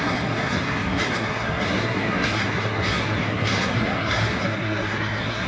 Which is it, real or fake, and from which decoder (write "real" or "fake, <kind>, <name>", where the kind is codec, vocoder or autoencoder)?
fake, codec, SNAC